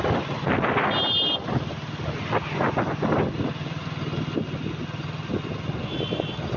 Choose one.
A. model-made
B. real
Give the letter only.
B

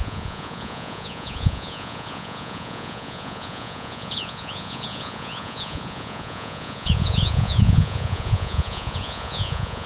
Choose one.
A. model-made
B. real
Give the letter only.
A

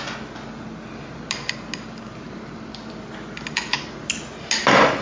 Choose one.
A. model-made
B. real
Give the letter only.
B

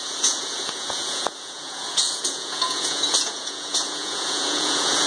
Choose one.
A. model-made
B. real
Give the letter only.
A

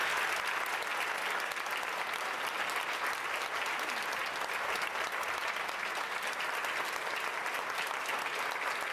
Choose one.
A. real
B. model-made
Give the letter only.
A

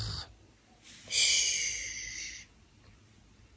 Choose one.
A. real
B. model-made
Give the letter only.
A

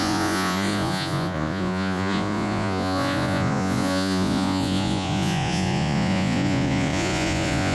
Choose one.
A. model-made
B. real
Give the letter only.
A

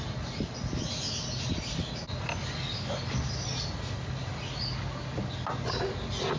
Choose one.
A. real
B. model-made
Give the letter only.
A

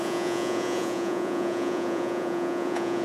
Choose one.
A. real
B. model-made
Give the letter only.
B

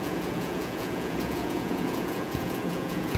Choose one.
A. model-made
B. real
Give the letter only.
A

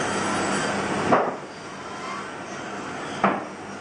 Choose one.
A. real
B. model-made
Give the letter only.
A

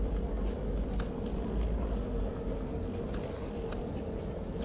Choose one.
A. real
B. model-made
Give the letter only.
A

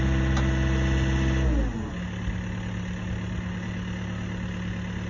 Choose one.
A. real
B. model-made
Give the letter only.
A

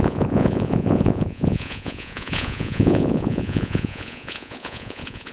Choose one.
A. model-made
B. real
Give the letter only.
A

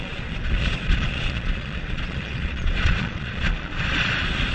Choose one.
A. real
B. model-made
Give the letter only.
B